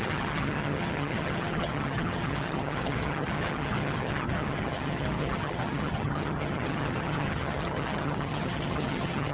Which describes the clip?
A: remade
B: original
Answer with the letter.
A